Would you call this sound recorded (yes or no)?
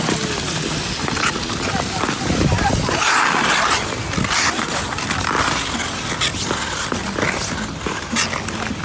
yes